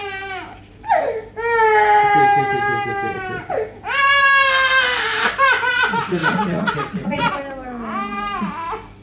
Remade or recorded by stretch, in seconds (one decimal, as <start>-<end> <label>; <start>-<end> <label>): 0.0-6.2 recorded; 6.2-7.3 remade; 7.3-9.0 recorded